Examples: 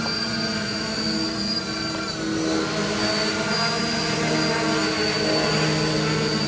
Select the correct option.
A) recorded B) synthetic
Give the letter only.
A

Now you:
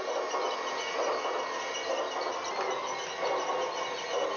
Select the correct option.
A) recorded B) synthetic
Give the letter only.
A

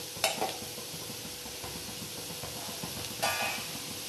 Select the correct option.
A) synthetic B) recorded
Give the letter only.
B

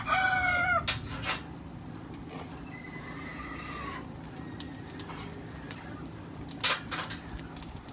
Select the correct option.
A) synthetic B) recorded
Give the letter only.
B